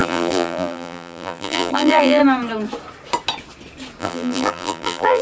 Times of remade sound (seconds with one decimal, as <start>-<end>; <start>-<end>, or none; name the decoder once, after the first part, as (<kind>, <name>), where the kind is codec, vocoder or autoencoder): 0.0-2.2 (vocoder, BigVGAN v2); 4.0-5.2